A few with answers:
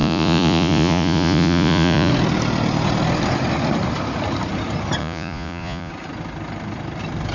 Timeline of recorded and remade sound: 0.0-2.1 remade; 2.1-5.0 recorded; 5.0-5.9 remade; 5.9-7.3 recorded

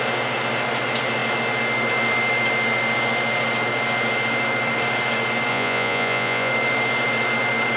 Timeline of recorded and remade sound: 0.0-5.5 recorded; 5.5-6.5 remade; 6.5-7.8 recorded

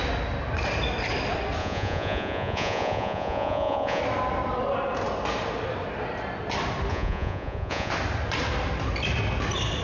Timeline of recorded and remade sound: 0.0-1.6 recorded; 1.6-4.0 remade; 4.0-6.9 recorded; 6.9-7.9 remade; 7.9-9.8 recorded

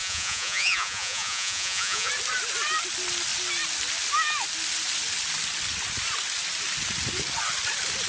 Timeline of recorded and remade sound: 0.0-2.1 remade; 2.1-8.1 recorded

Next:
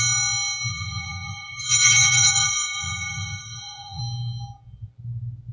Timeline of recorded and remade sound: 0.0-0.7 recorded; 0.7-4.0 remade; 4.0-5.5 recorded

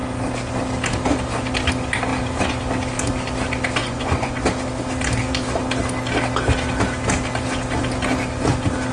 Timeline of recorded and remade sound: 0.0-3.8 recorded; 3.8-4.4 remade; 4.4-8.9 recorded